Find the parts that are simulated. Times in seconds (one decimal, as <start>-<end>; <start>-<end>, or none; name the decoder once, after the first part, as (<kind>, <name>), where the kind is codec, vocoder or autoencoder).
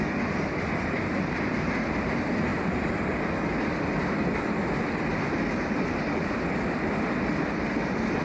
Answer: none